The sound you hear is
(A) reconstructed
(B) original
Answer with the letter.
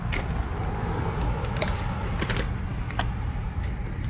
B